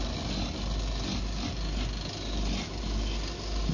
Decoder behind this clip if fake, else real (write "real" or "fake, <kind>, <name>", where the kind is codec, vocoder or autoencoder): real